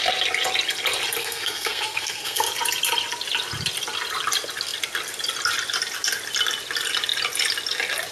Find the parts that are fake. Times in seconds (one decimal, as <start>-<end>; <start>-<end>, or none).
1.2-2.5